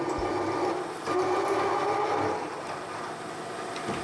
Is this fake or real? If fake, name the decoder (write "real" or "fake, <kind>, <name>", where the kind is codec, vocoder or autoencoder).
real